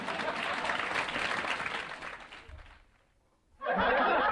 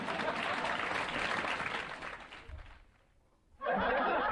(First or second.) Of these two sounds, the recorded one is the first